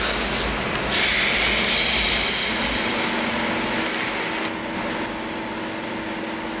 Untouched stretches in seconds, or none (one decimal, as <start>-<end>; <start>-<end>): 0.0-6.6